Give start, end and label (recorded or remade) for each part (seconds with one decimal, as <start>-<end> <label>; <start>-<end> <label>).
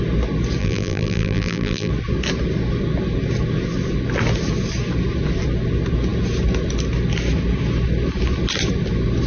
0.0-0.6 recorded; 0.6-1.9 remade; 1.9-9.3 recorded